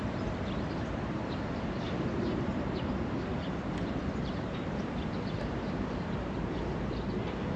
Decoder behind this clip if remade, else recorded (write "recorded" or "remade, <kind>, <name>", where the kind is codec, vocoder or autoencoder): remade, vocoder, BigVGAN v2